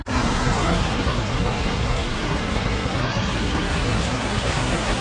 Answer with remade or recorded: remade